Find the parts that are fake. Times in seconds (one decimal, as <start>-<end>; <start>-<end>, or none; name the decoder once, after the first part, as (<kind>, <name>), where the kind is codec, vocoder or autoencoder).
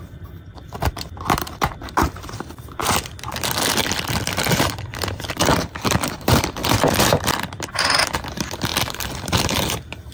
0.0-2.8 (vocoder, BigVGAN v2); 3.8-6.6; 7.7-10.1